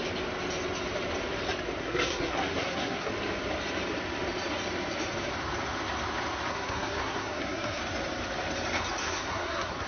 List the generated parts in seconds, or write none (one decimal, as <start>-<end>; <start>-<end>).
1.8-3.1; 6.5-7.8; 9.0-9.9